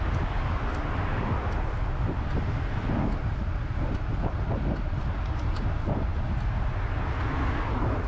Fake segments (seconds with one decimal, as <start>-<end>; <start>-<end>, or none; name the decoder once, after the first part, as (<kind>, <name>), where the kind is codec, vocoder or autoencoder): none